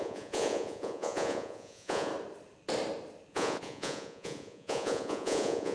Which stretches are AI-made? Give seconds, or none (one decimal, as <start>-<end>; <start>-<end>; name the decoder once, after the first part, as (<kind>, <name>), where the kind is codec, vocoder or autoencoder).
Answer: 0.0-2.1 (vocoder, Vocos); 3.3-5.7